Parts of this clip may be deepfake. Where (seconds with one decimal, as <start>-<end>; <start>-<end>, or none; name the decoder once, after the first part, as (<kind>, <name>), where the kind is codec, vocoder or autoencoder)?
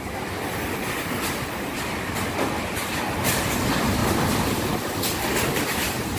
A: 4.0-4.7 (vocoder, BigVGAN v2)